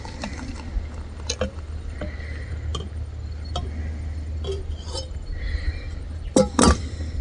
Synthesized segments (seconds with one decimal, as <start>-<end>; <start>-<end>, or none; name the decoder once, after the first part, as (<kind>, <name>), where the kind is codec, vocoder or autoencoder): none